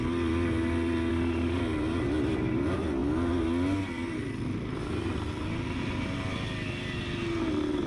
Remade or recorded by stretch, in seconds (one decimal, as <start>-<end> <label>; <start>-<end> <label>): 0.0-1.1 recorded; 1.1-1.6 remade; 1.6-7.9 recorded